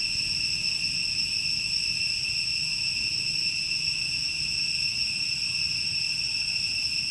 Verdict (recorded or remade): recorded